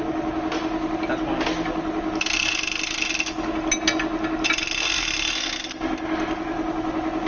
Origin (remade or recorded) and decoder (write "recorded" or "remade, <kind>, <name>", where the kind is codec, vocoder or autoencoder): recorded